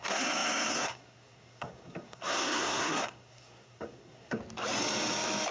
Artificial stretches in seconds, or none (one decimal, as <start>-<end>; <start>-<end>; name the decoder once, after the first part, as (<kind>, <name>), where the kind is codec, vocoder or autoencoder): 0.0-4.4 (codec, SNAC)